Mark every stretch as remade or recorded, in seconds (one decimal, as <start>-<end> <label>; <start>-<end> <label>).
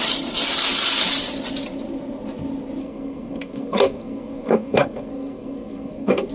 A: 0.0-2.8 recorded; 2.8-6.3 remade